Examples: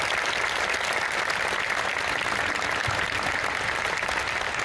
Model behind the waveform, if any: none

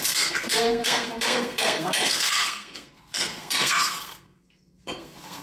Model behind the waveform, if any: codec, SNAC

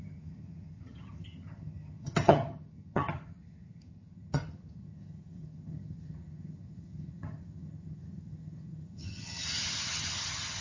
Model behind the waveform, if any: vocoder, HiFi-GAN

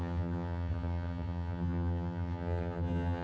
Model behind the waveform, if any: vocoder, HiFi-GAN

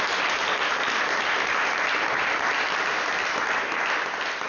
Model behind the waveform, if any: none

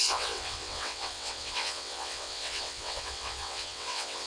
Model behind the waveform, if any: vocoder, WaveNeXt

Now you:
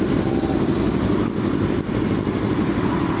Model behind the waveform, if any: none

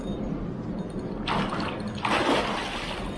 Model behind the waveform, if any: none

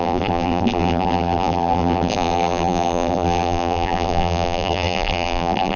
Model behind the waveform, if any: vocoder, BigVGAN v2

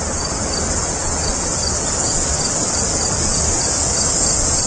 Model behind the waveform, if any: none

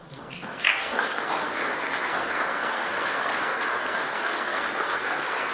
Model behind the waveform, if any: codec, SNAC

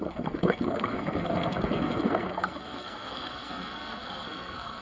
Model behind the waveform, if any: codec, SNAC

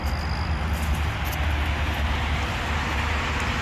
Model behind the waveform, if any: none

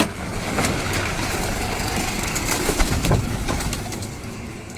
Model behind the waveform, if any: codec, DAC